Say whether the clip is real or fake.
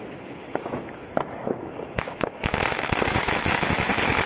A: fake